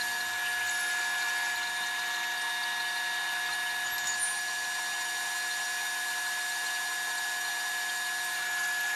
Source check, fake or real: real